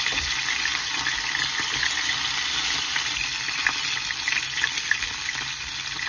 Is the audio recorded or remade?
recorded